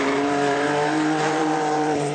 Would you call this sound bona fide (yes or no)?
no